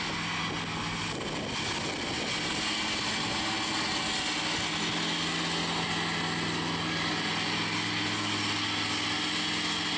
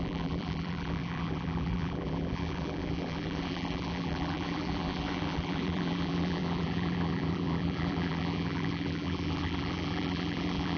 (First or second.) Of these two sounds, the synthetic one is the second